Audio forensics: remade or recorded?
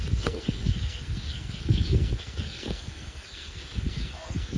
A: remade